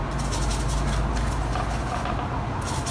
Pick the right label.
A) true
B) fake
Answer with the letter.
A